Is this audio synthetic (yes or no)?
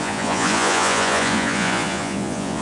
yes